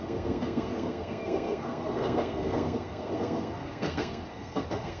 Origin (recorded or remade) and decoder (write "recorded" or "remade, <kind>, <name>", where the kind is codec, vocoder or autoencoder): remade, codec, SNAC